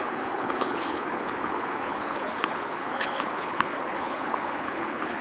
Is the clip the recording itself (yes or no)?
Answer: no